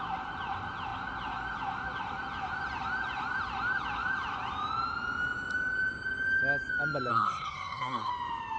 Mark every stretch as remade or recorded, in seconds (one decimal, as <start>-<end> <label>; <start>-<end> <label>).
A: 0.0-7.1 recorded; 7.1-8.1 remade; 8.1-8.6 recorded